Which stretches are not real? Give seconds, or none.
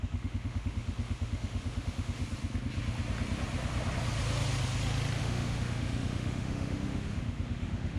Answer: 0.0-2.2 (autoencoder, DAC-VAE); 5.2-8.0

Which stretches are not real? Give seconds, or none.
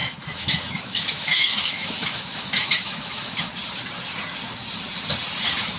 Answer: 0.0-3.5 (autoencoder, DAC-VAE)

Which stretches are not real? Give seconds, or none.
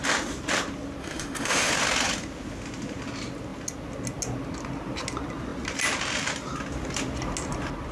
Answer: 1.0-1.7 (autoencoder, DAC-VAE)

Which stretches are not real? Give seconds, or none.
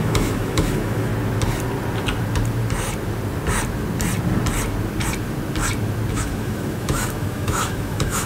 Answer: 0.0-1.1 (autoencoder, DAC-VAE); 6.1-8.3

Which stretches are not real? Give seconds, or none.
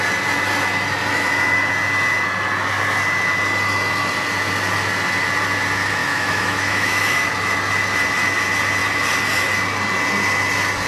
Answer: 6.0-7.3 (autoencoder, DAC-VAE)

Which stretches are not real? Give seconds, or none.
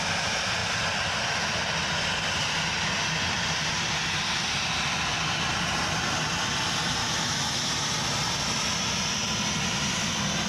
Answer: 7.0-7.7 (autoencoder, DAC-VAE)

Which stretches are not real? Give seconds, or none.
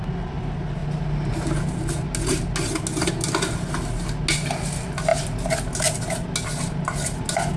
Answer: none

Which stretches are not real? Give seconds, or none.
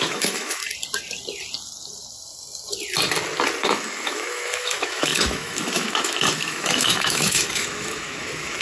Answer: 0.0-0.6 (autoencoder, DAC-VAE); 3.6-8.6